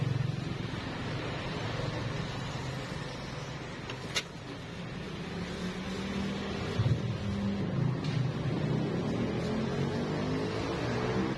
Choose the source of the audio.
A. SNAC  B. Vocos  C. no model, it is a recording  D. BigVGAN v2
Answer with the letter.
C